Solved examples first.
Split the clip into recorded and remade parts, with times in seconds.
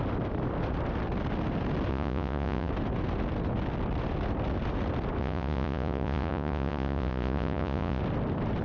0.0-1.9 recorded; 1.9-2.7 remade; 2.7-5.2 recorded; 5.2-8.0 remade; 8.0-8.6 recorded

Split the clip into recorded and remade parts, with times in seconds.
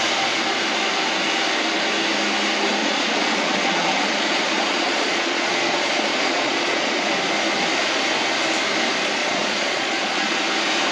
0.0-2.8 recorded; 2.8-7.1 remade; 7.1-9.2 recorded; 9.2-10.4 remade; 10.4-10.9 recorded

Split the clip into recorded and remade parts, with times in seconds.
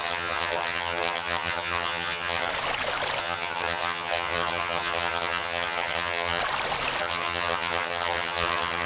0.0-2.5 remade; 2.5-3.2 recorded; 3.2-6.4 remade; 6.4-7.0 recorded; 7.0-8.9 remade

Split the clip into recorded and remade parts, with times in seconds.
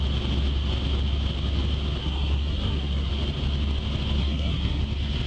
0.0-2.0 recorded; 2.0-3.1 remade; 3.1-4.2 recorded; 4.2-4.8 remade; 4.8-5.3 recorded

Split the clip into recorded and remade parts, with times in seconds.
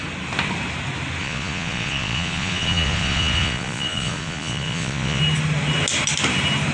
0.0-1.2 recorded; 1.2-5.2 remade; 5.2-6.7 recorded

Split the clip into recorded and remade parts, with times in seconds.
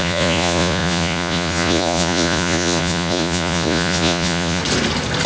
0.0-4.6 remade; 4.6-5.3 recorded